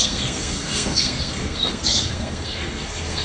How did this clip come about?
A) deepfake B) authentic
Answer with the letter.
A